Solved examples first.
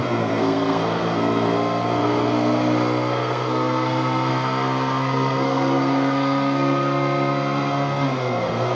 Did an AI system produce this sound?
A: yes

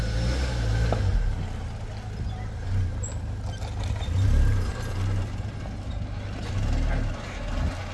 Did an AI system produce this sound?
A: no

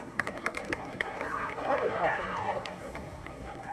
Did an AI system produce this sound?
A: yes